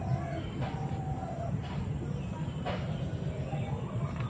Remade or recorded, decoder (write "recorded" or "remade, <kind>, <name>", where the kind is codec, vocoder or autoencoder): recorded